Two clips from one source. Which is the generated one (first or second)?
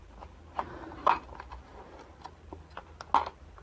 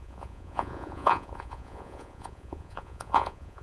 second